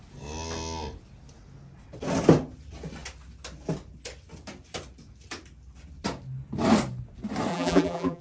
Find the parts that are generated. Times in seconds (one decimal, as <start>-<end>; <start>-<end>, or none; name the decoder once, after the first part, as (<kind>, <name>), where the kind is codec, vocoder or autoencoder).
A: 7.5-8.2 (vocoder, BigVGAN v2)